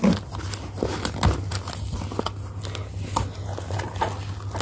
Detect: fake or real real